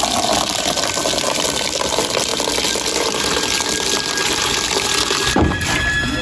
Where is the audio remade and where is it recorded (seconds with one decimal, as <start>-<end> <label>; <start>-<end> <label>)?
0.0-6.2 recorded